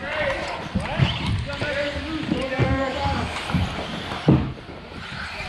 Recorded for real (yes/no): yes